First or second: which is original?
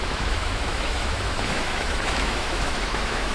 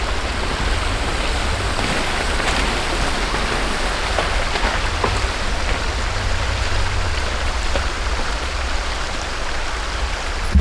second